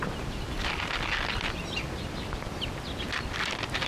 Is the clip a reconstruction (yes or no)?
no